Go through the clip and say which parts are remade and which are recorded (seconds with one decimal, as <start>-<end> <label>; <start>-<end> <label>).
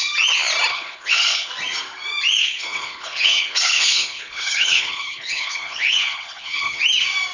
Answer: 0.0-0.7 recorded; 0.7-1.5 remade; 1.5-2.4 recorded; 2.4-6.8 remade; 6.8-7.3 recorded